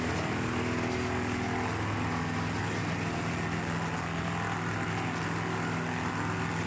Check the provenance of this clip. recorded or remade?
recorded